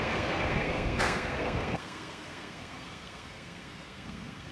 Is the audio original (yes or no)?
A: no